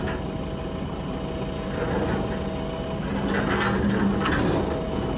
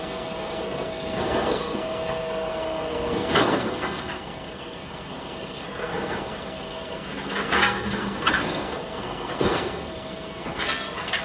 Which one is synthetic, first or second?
second